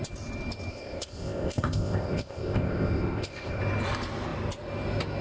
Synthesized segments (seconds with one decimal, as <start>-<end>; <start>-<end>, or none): 0.7-3.6